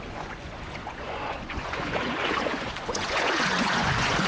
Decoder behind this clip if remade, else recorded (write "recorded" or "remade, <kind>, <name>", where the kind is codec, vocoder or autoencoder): remade, vocoder, Vocos